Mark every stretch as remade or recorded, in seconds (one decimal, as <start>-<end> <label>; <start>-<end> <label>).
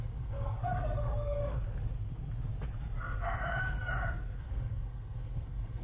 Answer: 0.0-1.4 remade; 1.4-4.4 recorded; 4.4-5.8 remade